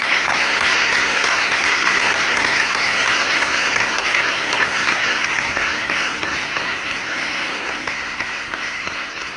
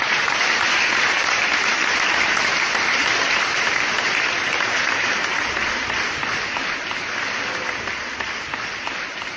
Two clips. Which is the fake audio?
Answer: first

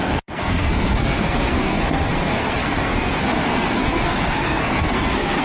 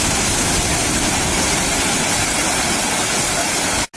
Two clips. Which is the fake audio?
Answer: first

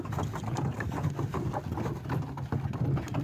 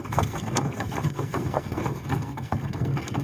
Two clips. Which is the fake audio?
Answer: second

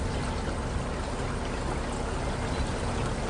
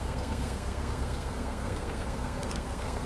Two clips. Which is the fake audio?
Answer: second